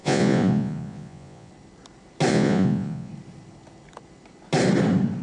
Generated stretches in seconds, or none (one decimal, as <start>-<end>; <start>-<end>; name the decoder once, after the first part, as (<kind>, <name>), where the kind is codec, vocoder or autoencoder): 0.0-1.5 (vocoder, Vocos); 2.3-3.1